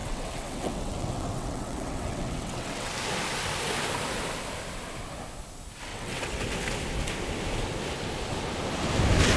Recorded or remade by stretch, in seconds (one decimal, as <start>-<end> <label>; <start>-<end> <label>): 0.0-2.9 remade; 2.9-5.9 recorded; 5.9-6.4 remade; 6.4-9.4 recorded